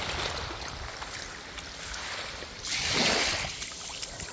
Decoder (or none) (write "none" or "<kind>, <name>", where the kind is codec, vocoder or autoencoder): none